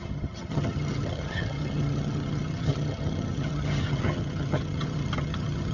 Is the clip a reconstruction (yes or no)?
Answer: yes